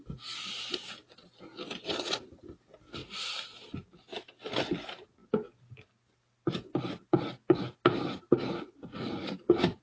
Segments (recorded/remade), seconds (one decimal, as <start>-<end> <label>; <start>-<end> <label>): 0.0-9.8 recorded